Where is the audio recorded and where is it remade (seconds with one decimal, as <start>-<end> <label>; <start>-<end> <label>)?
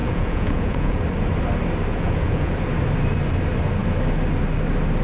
0.0-1.0 remade; 1.0-1.9 recorded; 1.9-2.5 remade; 2.5-5.0 recorded